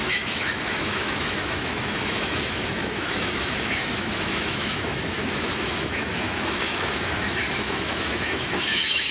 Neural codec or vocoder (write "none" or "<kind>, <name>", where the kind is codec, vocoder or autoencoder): autoencoder, DAC-VAE